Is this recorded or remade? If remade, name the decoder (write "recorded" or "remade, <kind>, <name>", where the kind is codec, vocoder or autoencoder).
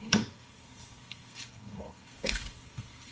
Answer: remade, codec, SNAC